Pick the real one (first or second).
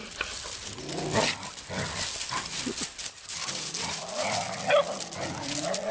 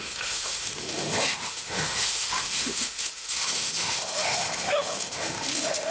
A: first